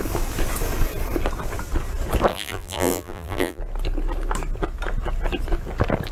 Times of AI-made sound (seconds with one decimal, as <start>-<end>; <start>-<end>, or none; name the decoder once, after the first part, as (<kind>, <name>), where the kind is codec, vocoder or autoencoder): 2.3-3.6 (vocoder, BigVGAN v2)